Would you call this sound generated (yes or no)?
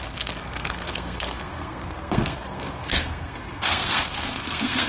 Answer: yes